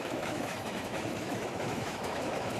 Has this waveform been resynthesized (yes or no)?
yes